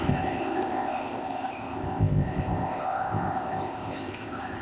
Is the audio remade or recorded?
remade